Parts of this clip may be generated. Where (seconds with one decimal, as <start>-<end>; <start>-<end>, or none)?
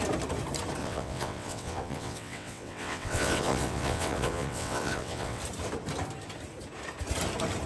0.8-5.4